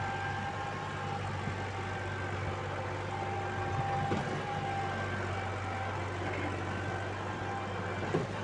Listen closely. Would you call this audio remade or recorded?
recorded